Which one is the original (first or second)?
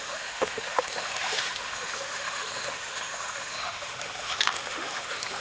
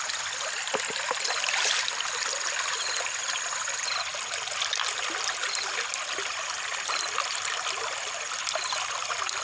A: second